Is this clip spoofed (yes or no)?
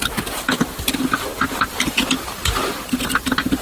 yes